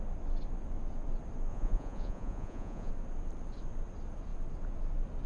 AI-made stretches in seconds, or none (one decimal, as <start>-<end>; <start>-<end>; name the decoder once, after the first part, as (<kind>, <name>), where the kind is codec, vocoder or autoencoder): 1.5-2.9 (vocoder, Vocos)